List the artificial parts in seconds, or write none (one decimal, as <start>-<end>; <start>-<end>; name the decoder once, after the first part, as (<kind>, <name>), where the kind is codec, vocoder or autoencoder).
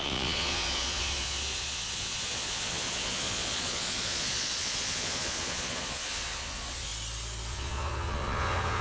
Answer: 0.0-6.9 (vocoder, Vocos); 7.5-8.8